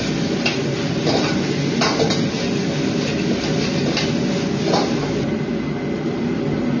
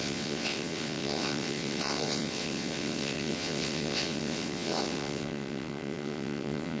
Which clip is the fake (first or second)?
second